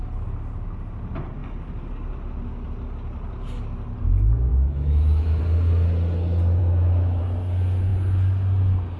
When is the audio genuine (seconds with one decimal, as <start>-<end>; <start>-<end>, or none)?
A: 0.0-4.5; 5.4-6.6; 7.2-9.0